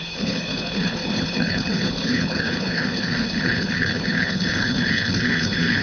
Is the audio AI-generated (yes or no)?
yes